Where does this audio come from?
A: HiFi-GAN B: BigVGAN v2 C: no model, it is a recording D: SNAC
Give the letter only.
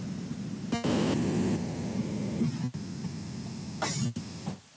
C